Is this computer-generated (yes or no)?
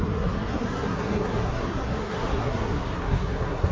yes